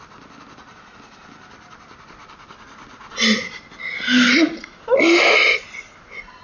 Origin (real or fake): real